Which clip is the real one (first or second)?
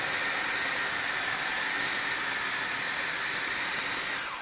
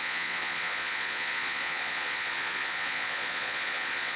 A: first